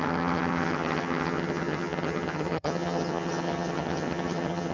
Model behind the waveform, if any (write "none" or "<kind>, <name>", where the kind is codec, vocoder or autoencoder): vocoder, HiFi-GAN